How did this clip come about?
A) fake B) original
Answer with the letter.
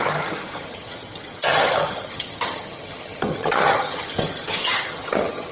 A